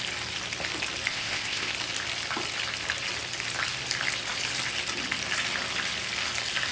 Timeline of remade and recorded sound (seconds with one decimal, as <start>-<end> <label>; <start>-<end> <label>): 0.0-1.1 recorded; 1.1-1.7 remade; 1.7-6.7 recorded